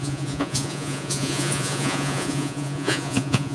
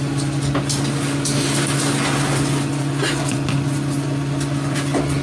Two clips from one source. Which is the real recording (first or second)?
second